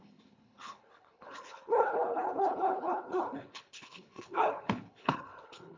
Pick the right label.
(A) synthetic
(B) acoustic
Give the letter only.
A